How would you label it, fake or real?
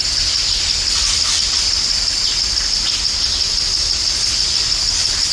real